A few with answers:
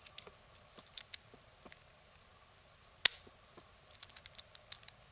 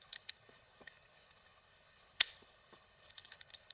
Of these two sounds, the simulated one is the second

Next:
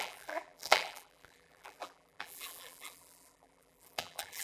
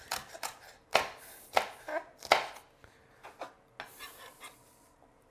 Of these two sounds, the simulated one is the first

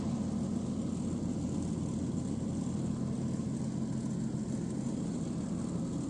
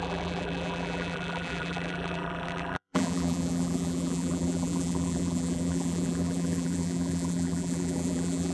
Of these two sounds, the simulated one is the second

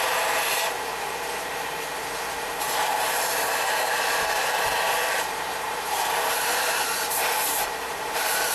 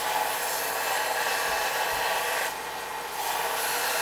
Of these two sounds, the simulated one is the first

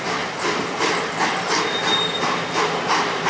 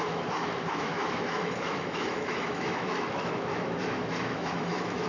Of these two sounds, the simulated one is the second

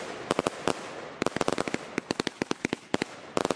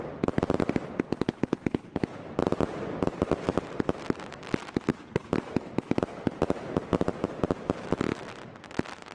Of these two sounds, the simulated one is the second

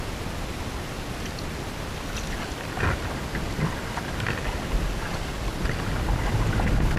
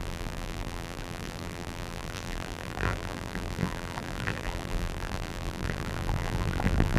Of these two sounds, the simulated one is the second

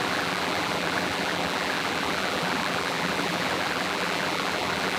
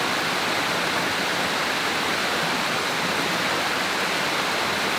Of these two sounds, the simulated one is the first